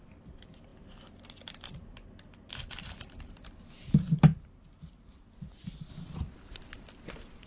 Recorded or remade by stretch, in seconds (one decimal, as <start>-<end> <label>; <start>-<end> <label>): 0.0-7.5 recorded